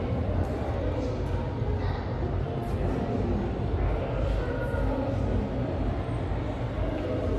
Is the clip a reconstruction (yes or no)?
no